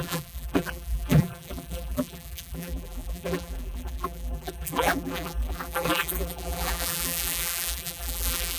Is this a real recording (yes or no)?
no